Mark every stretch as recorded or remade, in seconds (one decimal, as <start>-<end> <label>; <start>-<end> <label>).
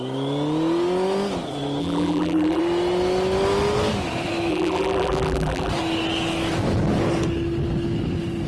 0.0-1.8 recorded; 1.8-2.6 remade; 2.6-4.5 recorded; 4.5-5.7 remade; 5.7-8.5 recorded